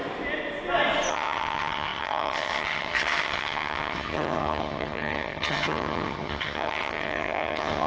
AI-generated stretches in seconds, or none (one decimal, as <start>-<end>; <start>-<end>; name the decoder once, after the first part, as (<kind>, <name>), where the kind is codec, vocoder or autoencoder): 1.1-7.9 (vocoder, HiFi-GAN)